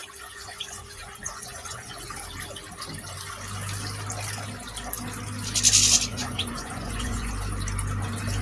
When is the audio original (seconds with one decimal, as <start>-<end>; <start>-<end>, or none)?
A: 2.1-6.1; 7.3-8.4